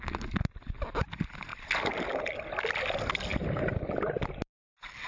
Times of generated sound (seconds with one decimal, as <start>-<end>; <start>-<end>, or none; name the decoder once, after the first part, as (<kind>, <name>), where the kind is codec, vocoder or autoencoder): none